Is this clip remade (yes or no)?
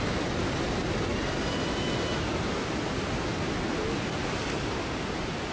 no